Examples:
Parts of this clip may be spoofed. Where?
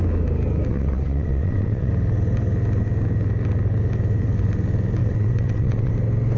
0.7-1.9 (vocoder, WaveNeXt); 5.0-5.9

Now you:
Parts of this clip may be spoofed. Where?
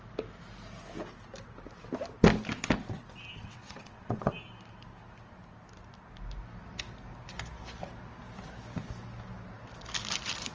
3.4-4.3 (vocoder, WaveNeXt)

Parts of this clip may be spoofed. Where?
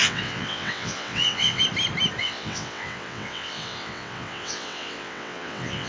0.0-1.6 (vocoder, WaveNeXt); 2.2-5.9